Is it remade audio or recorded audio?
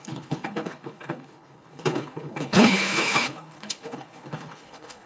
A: remade